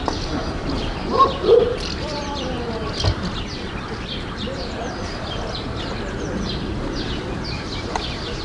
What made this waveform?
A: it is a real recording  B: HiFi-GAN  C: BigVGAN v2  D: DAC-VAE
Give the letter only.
C